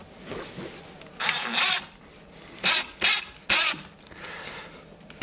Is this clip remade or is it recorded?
recorded